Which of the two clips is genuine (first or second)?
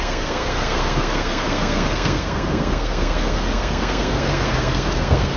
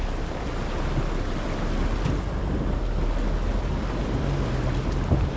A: second